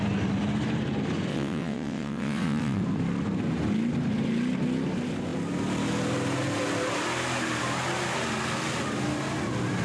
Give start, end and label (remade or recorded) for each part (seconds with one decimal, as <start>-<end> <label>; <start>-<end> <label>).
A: 0.0-1.3 recorded; 1.3-2.8 remade; 2.8-9.8 recorded